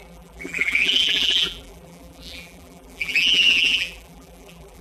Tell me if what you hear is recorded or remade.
remade